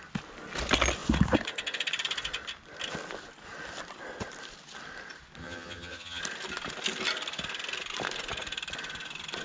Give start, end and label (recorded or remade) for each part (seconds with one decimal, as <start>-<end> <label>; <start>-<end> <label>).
0.0-5.4 recorded; 5.4-6.2 remade; 6.2-9.4 recorded